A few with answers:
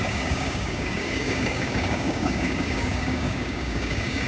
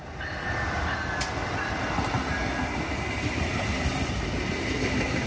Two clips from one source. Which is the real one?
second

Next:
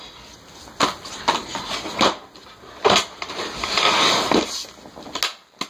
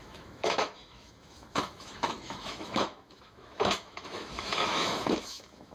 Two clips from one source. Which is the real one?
first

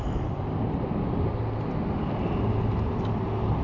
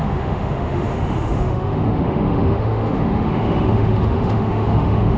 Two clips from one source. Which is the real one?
first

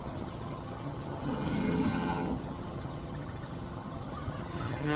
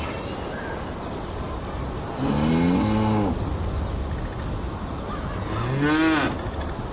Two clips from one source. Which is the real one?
second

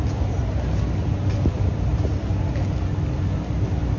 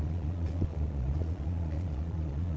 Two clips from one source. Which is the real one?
first